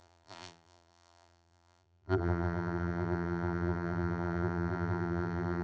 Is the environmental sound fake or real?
fake